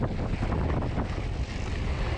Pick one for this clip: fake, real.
real